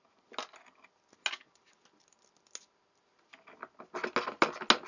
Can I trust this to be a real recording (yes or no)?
yes